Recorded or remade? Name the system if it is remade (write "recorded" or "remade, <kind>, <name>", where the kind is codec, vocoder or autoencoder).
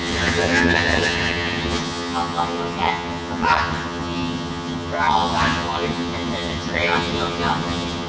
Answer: remade, vocoder, HiFi-GAN